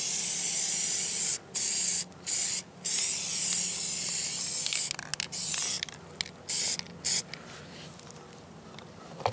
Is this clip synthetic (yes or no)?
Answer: no